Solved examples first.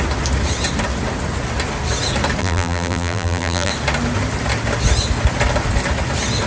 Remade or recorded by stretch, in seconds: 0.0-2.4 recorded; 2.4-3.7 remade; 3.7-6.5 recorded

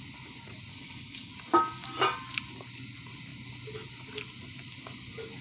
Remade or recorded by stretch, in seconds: 0.0-0.7 recorded; 0.7-1.3 remade; 1.3-5.4 recorded